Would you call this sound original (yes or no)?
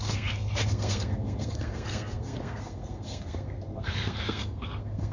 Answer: no